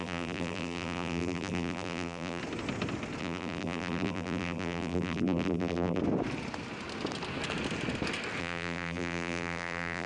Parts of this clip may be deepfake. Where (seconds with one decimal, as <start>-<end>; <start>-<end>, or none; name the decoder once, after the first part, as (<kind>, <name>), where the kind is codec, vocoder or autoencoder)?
0.0-2.4 (vocoder, BigVGAN v2); 3.2-6.0; 8.4-10.1